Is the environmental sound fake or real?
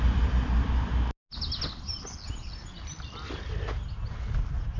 real